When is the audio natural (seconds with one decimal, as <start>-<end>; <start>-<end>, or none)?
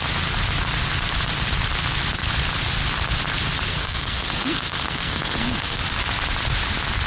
0.0-3.7; 5.8-7.1